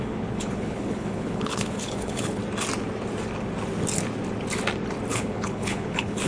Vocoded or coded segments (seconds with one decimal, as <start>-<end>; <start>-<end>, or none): 0.0-2.4; 5.1-6.3